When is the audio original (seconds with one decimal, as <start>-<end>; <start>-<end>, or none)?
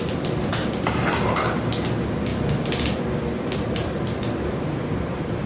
0.0-0.5; 1.1-2.3